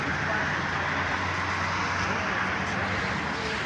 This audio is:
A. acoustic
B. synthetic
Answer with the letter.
A